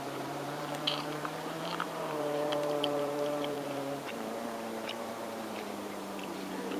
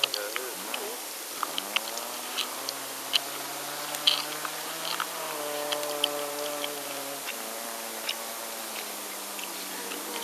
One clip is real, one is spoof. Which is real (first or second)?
second